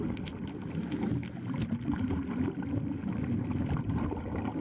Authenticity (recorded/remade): recorded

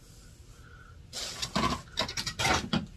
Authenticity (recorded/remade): recorded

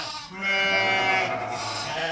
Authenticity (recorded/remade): recorded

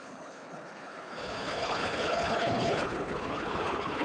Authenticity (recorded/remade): remade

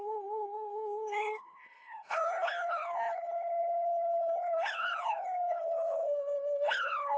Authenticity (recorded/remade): remade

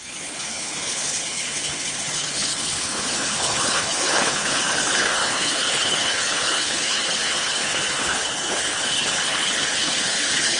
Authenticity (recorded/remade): remade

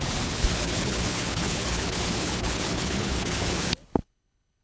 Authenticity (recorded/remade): remade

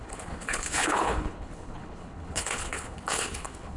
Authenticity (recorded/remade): remade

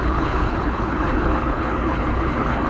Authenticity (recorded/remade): remade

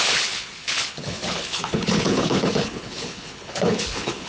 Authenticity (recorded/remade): remade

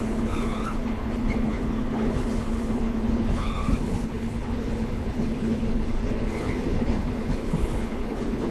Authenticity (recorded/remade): remade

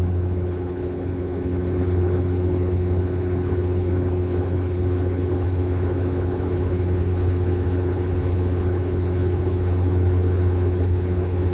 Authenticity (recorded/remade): remade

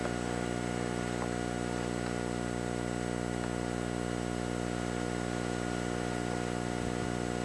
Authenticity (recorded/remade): recorded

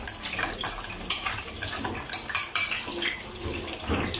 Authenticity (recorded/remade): recorded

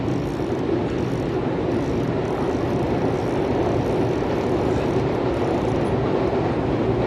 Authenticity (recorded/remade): recorded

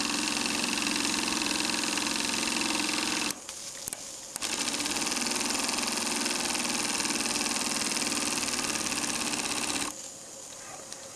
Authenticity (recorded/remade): recorded